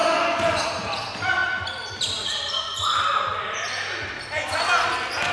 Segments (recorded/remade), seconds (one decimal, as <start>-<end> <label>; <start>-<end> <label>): 0.0-0.6 remade; 0.6-5.3 recorded